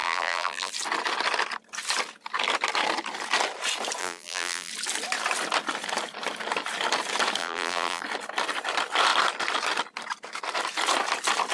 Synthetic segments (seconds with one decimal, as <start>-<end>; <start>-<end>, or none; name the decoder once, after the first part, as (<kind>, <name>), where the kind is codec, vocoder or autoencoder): 0.0-0.7 (vocoder, BigVGAN v2); 4.0-4.7; 7.4-8.0

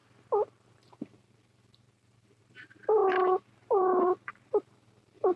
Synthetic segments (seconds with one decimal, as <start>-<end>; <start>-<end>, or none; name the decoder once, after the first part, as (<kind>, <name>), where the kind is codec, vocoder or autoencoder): 0.0-5.4 (vocoder, BigVGAN v2)

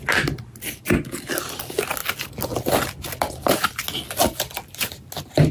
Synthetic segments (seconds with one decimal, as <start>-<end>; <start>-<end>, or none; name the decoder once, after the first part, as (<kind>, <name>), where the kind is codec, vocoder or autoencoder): none